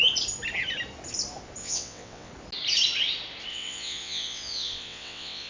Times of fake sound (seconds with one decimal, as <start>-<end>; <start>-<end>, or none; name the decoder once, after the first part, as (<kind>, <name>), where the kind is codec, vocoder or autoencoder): 1.6-2.3 (vocoder, WaveNeXt); 3.5-5.5